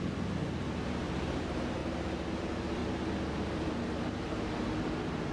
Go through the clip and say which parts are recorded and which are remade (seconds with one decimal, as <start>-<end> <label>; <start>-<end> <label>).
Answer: 0.0-1.8 remade; 1.8-2.4 recorded; 2.4-2.8 remade; 2.8-3.7 recorded; 3.7-5.3 remade